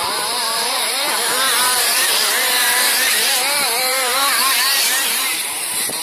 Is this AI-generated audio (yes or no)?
yes